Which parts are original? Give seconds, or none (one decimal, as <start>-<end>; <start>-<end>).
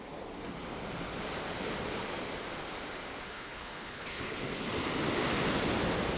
0.0-3.3; 4.3-6.2